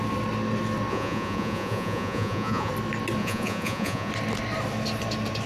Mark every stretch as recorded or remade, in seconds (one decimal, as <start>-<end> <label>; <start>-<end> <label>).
0.0-0.9 recorded; 0.9-2.7 remade; 2.7-3.2 recorded; 3.2-4.1 remade; 4.1-5.5 recorded